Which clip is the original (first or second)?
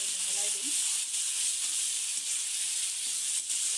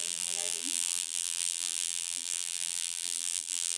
first